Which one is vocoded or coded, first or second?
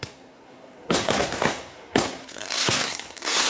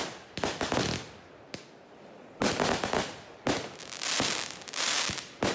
first